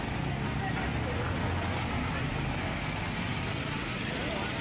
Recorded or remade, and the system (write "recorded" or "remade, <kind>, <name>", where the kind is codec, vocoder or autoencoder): recorded